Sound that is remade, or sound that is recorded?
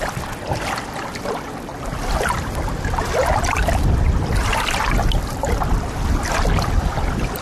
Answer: recorded